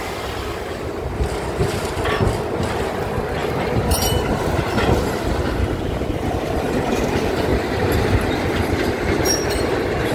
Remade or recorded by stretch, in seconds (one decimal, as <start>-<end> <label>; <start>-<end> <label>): 0.0-7.5 recorded; 7.5-10.1 remade